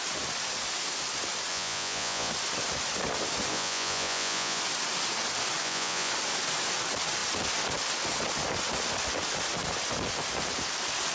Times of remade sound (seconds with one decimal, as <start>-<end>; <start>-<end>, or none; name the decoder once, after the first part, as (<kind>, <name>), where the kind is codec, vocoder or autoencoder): 1.5-2.3 (vocoder, Vocos); 3.5-4.6; 5.6-6.1